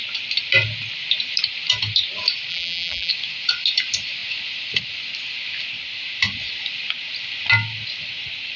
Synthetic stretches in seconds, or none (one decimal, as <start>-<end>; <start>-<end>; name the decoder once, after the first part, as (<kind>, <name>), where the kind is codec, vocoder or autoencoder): 2.5-3.1 (vocoder, BigVGAN v2)